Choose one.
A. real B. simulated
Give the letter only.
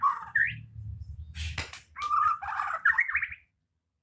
A